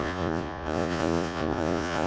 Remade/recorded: remade